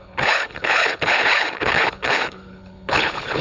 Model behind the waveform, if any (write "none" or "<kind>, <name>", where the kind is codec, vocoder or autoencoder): codec, HILCodec